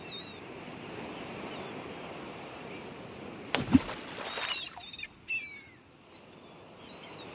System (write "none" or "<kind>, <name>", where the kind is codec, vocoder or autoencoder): none